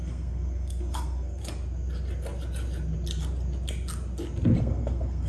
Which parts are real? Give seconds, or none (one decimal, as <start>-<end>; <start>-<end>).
1.4-4.6